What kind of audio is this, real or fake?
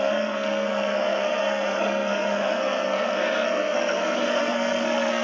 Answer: fake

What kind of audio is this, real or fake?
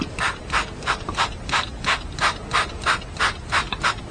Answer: real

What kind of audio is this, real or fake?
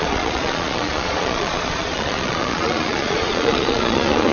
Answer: fake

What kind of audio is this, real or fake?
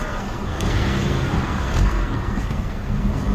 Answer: fake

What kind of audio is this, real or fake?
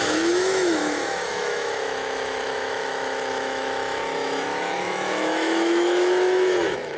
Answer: fake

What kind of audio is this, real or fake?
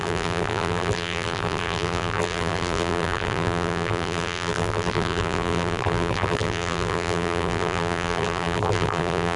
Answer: fake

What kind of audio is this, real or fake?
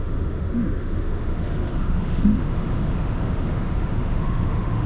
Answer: fake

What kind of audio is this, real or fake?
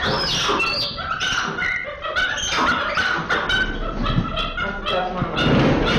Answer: real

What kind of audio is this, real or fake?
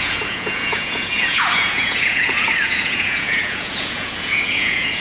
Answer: fake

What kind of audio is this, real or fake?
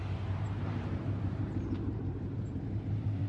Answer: fake